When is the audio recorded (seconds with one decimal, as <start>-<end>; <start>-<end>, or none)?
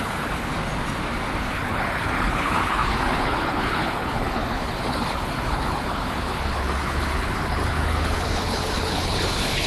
0.5-1.4